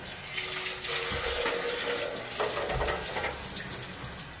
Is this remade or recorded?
recorded